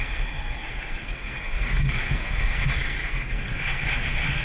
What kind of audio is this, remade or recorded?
remade